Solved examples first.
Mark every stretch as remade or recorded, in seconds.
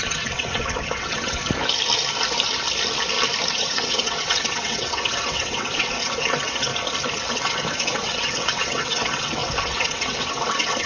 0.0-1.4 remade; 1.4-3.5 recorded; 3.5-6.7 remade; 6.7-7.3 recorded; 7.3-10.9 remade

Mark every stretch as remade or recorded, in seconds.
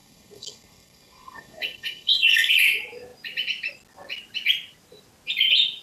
0.0-2.5 remade; 2.5-5.8 recorded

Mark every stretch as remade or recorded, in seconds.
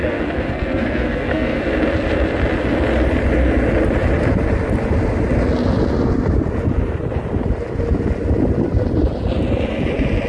0.0-1.6 remade; 1.6-10.3 recorded